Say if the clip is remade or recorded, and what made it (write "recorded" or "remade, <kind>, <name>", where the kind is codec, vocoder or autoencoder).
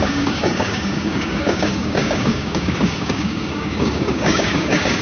remade, codec, DAC